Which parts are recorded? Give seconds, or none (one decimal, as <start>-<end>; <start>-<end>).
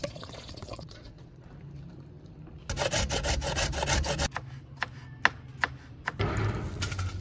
1.5-7.2